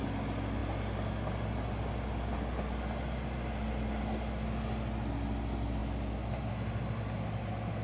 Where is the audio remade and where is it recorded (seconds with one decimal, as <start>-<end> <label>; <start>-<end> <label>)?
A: 0.0-7.8 recorded